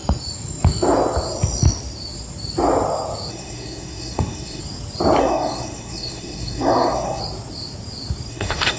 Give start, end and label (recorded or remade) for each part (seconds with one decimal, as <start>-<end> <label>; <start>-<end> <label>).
0.0-3.3 recorded; 3.3-4.6 remade; 4.6-5.2 recorded; 5.2-7.2 remade; 7.2-8.3 recorded; 8.3-8.8 remade

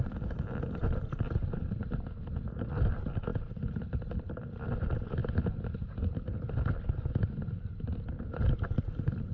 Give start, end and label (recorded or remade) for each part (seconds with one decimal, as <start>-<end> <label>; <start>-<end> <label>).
0.0-9.3 recorded

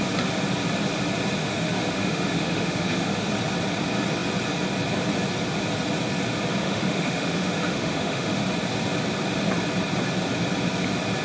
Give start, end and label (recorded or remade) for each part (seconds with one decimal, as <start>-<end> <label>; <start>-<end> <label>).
0.0-1.4 recorded; 1.4-3.3 remade; 3.3-6.6 recorded; 6.6-8.4 remade; 8.4-11.2 recorded

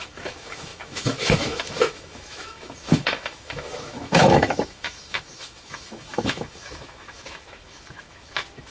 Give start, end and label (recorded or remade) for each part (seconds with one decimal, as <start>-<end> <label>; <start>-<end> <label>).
0.0-8.7 remade

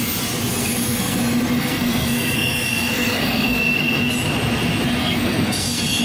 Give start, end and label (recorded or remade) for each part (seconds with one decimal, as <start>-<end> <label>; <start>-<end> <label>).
0.0-0.6 recorded; 0.6-1.2 remade; 1.2-1.6 recorded; 1.6-4.1 remade; 4.1-5.0 recorded; 5.0-6.0 remade